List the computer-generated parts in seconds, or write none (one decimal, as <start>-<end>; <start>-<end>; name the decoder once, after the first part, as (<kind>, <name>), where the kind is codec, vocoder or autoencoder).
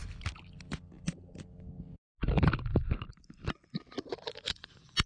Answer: none